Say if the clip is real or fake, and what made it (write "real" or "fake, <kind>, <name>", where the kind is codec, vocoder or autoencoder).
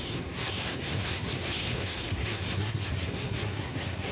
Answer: fake, codec, SNAC